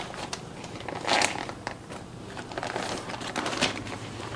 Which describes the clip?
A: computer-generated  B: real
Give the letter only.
A